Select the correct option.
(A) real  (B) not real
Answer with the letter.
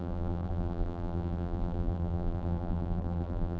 B